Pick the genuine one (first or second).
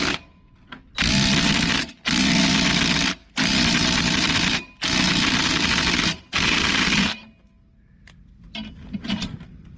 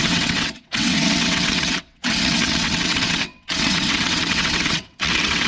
first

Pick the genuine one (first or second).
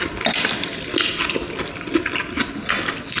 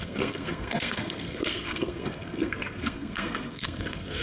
first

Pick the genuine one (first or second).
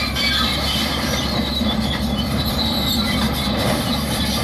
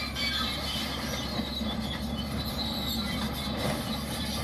second